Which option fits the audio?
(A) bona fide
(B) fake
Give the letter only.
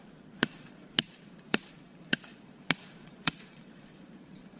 B